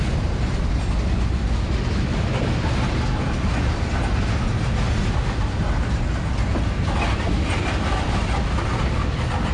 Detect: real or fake real